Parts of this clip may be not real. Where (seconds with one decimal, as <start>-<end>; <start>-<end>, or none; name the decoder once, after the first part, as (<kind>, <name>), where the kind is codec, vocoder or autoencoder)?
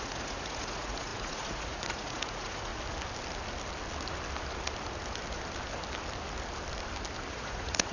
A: 0.0-2.7 (vocoder, Vocos); 7.3-7.9